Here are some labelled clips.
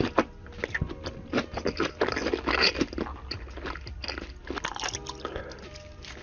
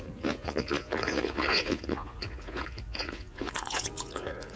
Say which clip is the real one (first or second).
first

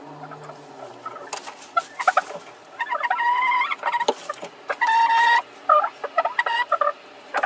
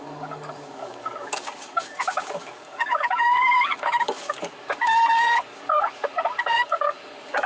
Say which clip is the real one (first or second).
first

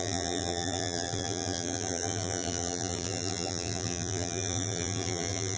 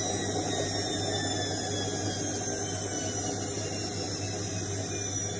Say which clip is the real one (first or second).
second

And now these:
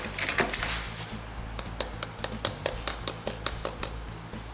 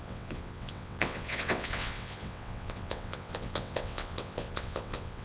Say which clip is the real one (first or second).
first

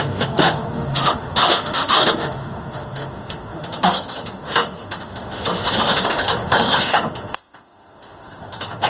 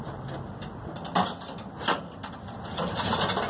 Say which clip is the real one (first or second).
second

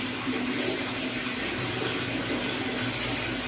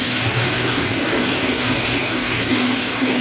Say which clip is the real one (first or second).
first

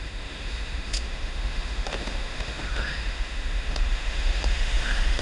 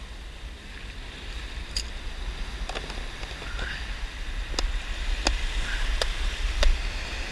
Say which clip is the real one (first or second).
second